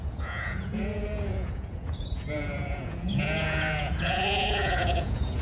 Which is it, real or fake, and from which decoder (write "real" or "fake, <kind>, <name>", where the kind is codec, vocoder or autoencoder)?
fake, vocoder, Vocos